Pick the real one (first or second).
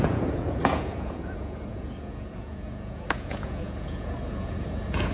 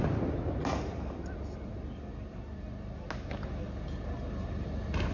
second